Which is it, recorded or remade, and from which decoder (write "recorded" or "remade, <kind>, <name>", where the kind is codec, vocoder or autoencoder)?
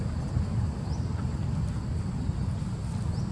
recorded